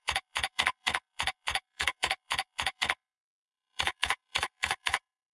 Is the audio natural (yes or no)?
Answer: no